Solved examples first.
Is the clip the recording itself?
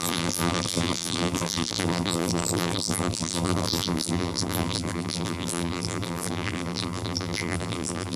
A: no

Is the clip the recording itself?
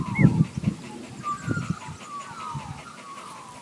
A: yes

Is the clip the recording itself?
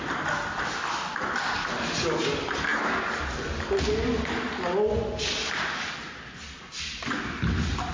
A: yes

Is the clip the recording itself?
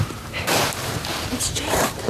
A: no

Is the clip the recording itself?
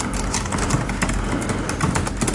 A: yes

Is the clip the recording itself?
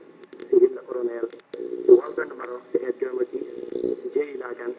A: yes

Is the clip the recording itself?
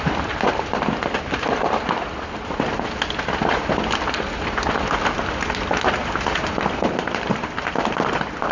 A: no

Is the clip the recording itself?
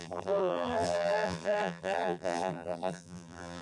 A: no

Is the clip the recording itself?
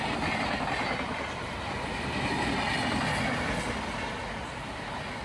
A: yes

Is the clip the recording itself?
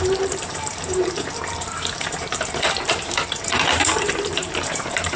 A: no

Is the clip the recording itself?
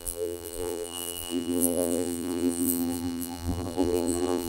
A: no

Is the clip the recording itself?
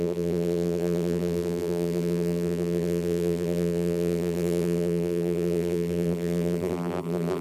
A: no